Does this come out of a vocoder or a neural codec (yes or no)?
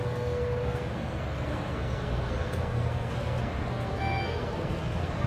yes